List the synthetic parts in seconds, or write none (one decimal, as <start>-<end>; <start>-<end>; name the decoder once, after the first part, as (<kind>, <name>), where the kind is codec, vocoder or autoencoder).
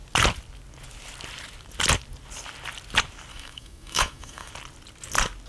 3.3-4.5 (autoencoder, DAC-VAE)